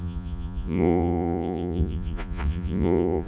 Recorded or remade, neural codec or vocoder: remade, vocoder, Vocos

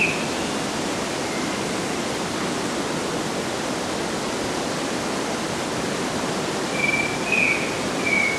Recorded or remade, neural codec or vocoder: recorded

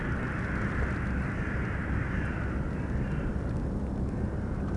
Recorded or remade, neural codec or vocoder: recorded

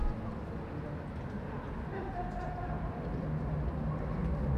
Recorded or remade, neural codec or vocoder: recorded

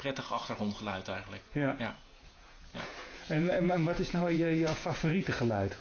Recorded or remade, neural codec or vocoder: remade, vocoder, Vocos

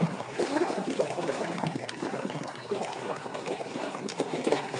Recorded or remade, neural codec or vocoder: remade, codec, SNAC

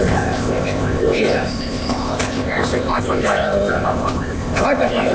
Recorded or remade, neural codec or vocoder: remade, codec, ZipCodec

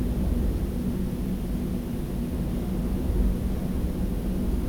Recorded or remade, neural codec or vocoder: recorded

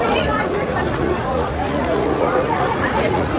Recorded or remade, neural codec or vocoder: remade, vocoder, Vocos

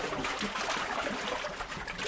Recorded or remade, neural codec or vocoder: recorded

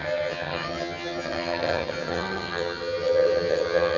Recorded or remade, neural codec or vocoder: remade, vocoder, HiFi-GAN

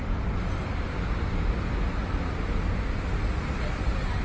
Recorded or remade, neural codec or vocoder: recorded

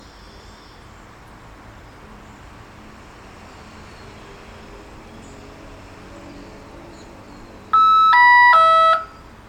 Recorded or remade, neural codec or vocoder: recorded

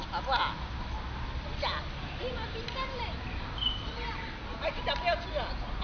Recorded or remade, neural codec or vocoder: recorded